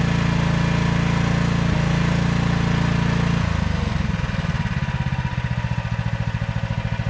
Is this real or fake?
real